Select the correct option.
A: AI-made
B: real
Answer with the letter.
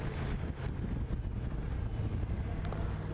B